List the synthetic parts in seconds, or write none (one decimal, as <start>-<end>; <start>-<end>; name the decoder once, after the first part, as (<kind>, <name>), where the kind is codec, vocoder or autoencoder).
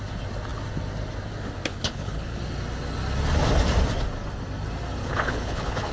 1.7-2.4 (codec, HILCodec); 5.0-5.9